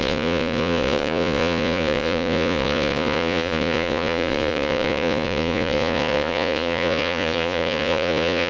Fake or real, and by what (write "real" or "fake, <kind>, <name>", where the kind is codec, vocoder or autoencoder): fake, vocoder, Vocos